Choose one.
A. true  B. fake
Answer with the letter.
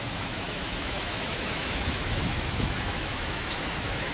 B